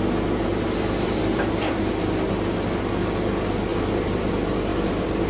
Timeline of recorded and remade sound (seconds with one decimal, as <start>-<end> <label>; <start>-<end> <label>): 0.0-0.5 recorded; 0.5-1.9 remade; 1.9-3.7 recorded; 3.7-4.3 remade; 4.3-4.7 recorded; 4.7-5.3 remade